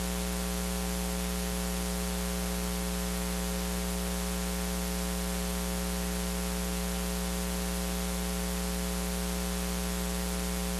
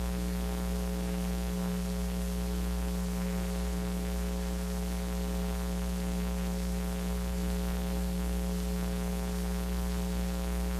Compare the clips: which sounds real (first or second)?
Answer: first